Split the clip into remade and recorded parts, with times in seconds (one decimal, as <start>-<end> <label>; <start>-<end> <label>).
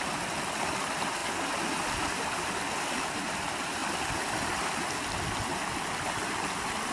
0.0-6.9 recorded